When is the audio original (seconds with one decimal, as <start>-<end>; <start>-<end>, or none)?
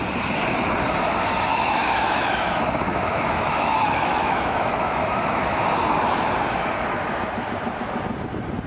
0.0-1.5; 2.5-2.9; 5.6-8.7